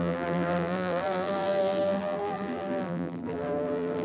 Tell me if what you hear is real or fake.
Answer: fake